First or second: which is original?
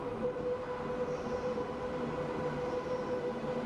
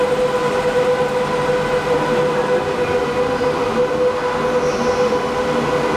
second